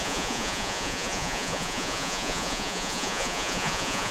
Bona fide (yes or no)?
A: no